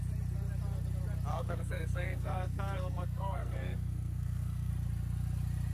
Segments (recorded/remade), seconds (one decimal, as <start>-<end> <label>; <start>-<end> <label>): 0.0-1.3 recorded; 1.3-4.7 remade; 4.7-5.7 recorded